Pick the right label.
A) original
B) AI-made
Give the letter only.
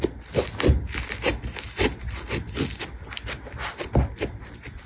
A